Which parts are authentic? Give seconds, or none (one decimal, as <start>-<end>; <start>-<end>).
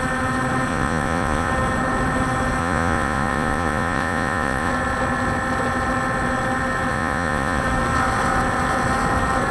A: 0.0-0.7; 1.5-2.6; 4.7-6.9; 7.6-9.5